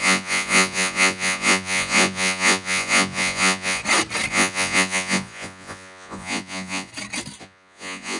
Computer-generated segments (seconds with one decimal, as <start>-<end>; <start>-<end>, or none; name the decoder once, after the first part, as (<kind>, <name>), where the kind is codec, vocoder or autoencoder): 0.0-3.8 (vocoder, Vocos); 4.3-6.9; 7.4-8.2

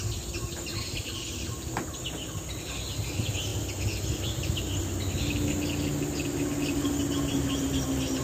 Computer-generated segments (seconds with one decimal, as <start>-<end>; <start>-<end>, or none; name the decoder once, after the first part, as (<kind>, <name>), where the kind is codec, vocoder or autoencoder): none

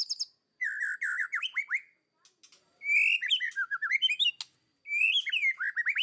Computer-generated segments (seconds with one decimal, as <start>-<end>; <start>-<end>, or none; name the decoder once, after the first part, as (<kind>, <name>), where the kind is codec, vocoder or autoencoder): none